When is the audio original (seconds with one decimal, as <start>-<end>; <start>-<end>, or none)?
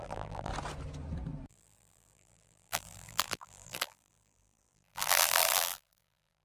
0.5-1.5